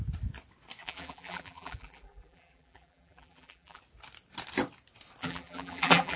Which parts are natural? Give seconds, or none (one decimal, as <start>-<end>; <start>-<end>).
0.0-0.8; 3.8-5.2